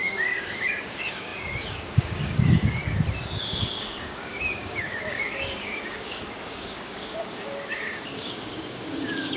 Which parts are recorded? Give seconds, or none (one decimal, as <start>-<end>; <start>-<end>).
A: 2.8-3.4